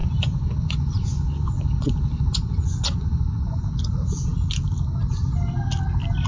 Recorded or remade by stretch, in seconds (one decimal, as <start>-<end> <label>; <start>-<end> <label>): 0.0-3.8 remade; 3.8-6.3 recorded